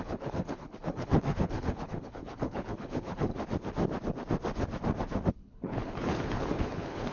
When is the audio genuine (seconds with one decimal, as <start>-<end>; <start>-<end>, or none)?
3.3-5.3